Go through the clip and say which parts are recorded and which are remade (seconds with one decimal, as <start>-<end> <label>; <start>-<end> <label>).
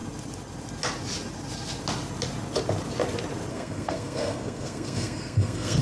0.0-3.5 recorded; 3.5-5.8 remade